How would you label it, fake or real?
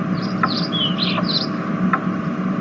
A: fake